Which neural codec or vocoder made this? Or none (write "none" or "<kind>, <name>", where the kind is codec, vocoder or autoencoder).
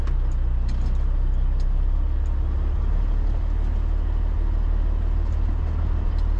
none